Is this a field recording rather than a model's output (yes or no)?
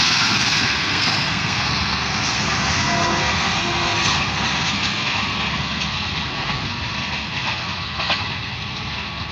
no